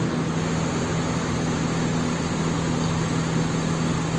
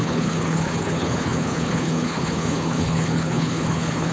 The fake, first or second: second